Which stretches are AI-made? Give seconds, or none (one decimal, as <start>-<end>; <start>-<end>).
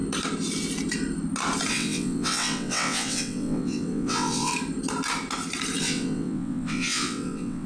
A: 1.7-4.5; 5.8-7.7